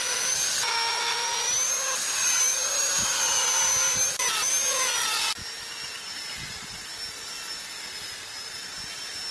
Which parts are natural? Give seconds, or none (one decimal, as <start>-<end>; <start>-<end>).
0.0-9.3